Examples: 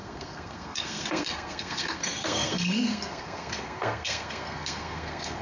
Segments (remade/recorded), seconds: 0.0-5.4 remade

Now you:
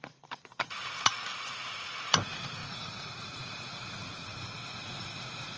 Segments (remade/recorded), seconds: 0.0-5.6 remade

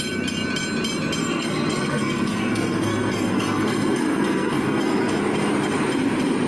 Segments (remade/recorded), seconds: 0.0-1.2 recorded; 1.2-5.1 remade; 5.1-6.5 recorded

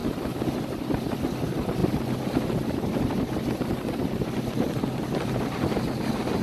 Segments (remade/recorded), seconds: 0.0-6.4 recorded

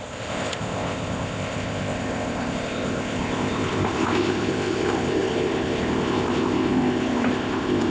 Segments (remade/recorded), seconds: 0.0-7.9 remade

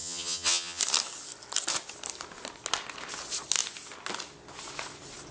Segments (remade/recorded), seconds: 0.0-0.8 remade; 0.8-5.3 recorded

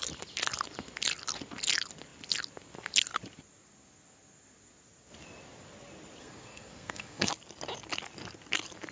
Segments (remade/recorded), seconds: 0.0-6.2 recorded; 6.2-7.3 remade; 7.3-8.9 recorded